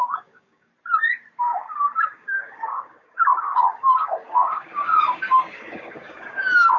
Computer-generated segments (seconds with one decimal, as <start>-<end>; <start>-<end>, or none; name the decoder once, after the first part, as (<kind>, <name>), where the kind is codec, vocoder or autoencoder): 0.0-0.7 (codec, DAC); 1.4-6.8